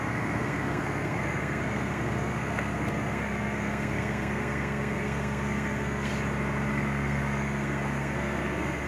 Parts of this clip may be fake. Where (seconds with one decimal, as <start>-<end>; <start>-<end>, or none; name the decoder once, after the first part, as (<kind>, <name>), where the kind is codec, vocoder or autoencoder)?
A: 0.0-6.1 (codec, SNAC); 6.7-8.9